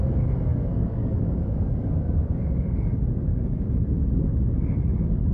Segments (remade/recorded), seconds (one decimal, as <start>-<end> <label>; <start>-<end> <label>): 0.0-0.5 recorded; 0.5-3.7 remade; 3.7-5.3 recorded